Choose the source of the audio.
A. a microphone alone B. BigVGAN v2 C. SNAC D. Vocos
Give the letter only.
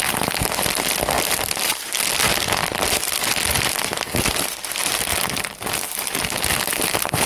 B